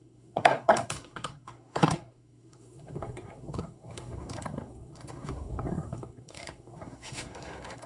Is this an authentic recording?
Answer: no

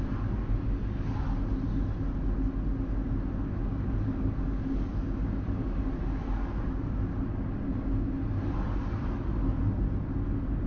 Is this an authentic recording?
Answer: yes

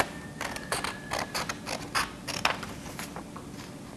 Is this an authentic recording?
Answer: yes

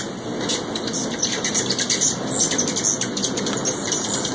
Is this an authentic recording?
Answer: yes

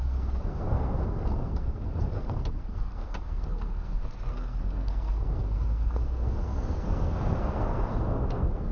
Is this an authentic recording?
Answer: no